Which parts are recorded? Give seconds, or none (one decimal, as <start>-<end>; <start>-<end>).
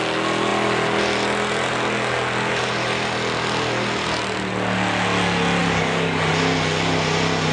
0.0-5.6; 6.3-7.5